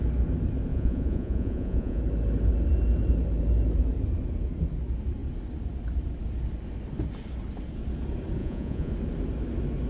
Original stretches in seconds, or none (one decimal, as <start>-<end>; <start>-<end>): 0.0-0.7; 2.0-8.4; 8.9-9.9